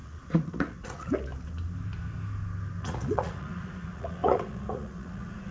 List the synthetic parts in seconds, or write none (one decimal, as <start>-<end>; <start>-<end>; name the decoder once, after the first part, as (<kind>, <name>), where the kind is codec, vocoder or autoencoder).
0.0-1.3 (vocoder, Vocos); 2.8-5.5